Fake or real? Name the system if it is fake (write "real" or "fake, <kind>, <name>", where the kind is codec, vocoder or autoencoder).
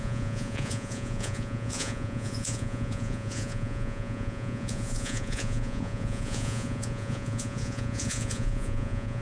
fake, vocoder, Vocos